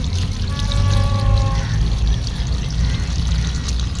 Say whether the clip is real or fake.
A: real